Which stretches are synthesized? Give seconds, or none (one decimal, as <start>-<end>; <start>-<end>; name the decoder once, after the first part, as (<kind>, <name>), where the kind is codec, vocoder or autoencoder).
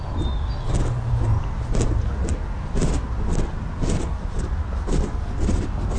none